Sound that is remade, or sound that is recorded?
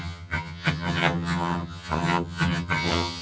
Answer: remade